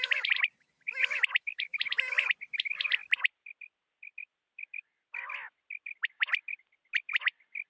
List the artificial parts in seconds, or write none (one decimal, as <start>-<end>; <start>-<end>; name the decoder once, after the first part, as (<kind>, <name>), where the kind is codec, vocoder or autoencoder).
none